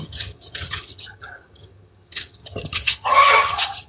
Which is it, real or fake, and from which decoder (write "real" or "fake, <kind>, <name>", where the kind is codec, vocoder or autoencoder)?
fake, vocoder, HiFi-GAN